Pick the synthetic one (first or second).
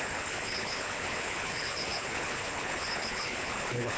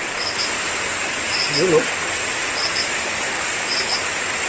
first